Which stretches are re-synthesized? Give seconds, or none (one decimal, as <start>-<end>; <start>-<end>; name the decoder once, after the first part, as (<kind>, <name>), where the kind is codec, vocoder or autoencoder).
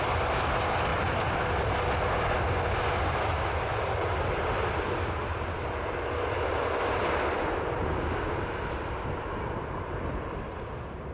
none